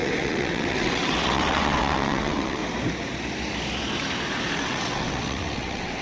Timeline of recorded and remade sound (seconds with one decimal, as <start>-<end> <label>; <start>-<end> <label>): 0.0-2.6 remade; 2.6-4.6 recorded; 4.6-6.0 remade